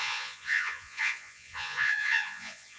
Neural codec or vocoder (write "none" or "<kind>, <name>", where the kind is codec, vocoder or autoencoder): vocoder, Vocos